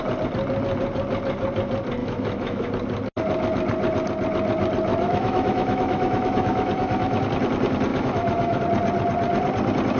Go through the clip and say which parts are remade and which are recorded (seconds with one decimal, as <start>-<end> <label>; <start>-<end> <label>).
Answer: 0.0-2.0 recorded; 2.0-2.7 remade; 2.7-4.9 recorded; 4.9-7.2 remade; 7.2-7.9 recorded; 7.9-8.6 remade; 8.6-10.0 recorded